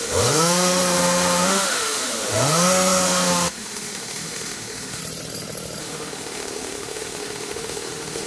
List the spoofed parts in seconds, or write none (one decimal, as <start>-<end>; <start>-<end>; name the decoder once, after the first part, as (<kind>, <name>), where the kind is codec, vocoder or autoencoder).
0.0-5.0 (autoencoder, DAC-VAE); 5.8-8.3